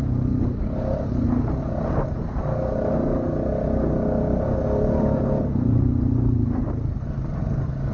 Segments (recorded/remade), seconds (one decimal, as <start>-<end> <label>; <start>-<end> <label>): 0.0-7.9 recorded